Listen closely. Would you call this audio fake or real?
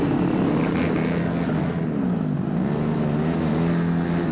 real